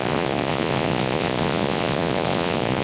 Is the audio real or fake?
fake